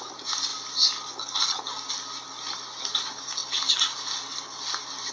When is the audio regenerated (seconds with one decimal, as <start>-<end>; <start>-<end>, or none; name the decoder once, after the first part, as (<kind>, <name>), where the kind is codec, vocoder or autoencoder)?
none